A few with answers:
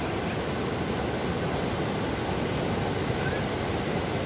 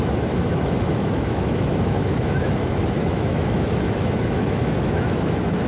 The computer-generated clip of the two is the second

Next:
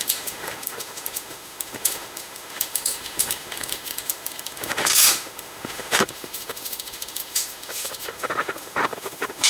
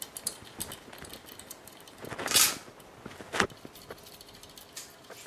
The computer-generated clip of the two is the first